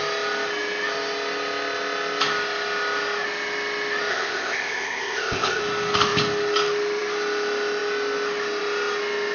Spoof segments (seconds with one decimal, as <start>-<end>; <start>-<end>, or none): 4.1-5.6